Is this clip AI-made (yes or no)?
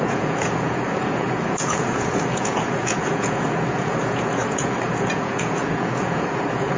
yes